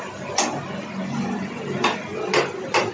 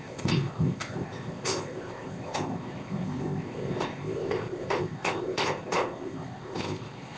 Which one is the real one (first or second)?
first